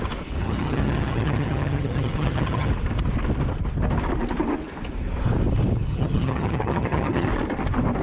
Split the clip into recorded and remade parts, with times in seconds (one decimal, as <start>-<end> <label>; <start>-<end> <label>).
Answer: 0.0-0.4 recorded; 0.4-2.7 remade; 2.7-5.9 recorded; 5.9-7.3 remade; 7.3-8.0 recorded